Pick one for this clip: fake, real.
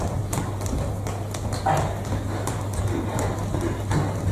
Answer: real